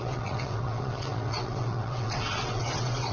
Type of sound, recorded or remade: remade